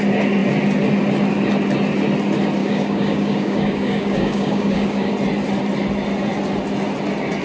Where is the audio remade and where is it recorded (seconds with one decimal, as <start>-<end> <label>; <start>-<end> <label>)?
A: 0.0-2.6 recorded; 2.6-5.1 remade; 5.1-7.4 recorded